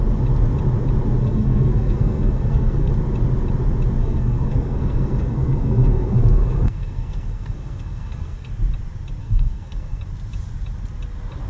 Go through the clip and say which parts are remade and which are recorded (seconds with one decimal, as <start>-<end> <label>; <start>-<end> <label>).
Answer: 0.0-1.2 recorded; 1.2-2.9 remade; 2.9-4.0 recorded; 4.0-8.5 remade; 8.5-9.2 recorded; 9.2-10.0 remade; 10.0-11.5 recorded

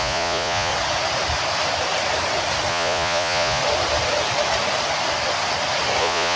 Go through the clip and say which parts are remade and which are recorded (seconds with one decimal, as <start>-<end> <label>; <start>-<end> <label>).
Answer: 0.0-0.7 remade; 0.7-2.7 recorded; 2.7-3.6 remade; 3.6-6.0 recorded; 6.0-6.4 remade

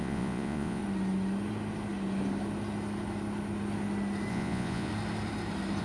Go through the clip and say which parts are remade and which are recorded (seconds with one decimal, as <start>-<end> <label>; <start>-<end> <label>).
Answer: 0.0-0.8 remade; 0.8-4.3 recorded; 4.3-4.9 remade; 4.9-5.8 recorded

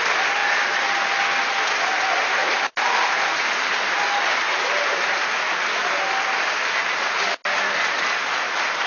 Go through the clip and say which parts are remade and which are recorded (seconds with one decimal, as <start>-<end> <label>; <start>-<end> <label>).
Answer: 0.0-0.4 recorded; 0.4-0.9 remade; 0.9-8.9 recorded